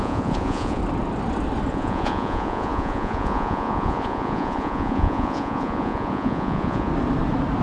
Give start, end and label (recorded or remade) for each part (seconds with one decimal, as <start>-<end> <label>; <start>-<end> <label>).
0.0-0.8 remade; 0.8-1.7 recorded; 1.7-6.9 remade; 6.9-7.6 recorded